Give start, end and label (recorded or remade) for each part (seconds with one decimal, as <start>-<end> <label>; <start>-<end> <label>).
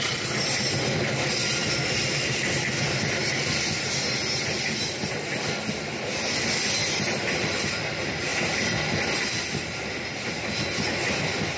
0.0-11.6 recorded